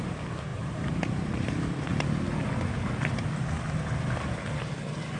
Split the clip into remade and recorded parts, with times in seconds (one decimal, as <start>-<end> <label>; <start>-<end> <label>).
0.0-1.9 remade; 1.9-5.2 recorded